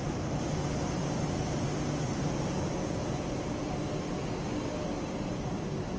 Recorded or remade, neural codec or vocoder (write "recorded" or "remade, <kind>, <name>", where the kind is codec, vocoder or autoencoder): recorded